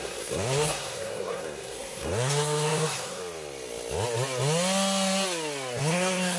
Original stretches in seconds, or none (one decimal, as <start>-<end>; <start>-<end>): 3.2-5.8